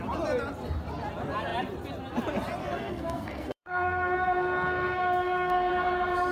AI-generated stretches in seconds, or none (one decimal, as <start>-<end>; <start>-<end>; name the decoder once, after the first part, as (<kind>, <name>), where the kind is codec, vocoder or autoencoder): 2.6-5.7 (codec, SNAC)